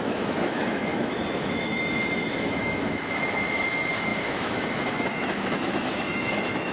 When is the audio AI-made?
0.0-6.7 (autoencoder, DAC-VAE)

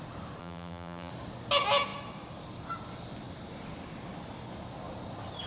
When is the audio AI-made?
0.4-1.1 (vocoder, BigVGAN v2)

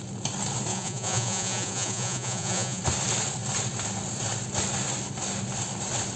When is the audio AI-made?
0.7-2.8 (vocoder, Vocos)